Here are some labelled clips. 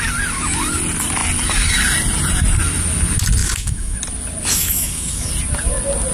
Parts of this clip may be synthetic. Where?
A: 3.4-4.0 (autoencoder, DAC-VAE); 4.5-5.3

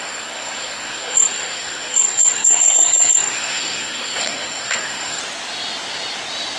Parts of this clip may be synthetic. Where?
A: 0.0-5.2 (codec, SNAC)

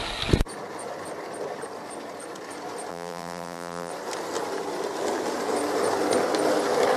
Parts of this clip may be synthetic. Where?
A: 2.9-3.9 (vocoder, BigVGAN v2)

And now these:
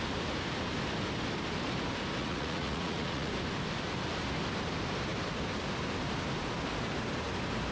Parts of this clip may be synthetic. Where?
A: 2.2-3.3 (vocoder, Vocos)

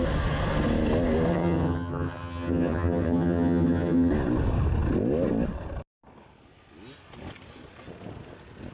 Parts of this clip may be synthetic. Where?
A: 1.3-4.1 (vocoder, HiFi-GAN)

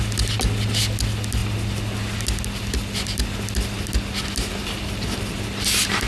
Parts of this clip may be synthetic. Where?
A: none

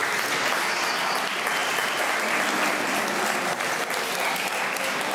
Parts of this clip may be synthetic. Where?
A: none